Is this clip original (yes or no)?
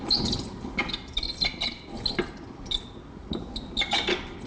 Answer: yes